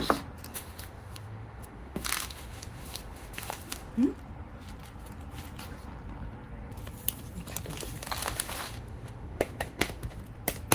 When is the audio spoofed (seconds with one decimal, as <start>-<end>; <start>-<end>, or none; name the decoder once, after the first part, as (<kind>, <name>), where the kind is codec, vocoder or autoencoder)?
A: 0.5-3.9 (autoencoder, DAC-VAE); 8.2-10.2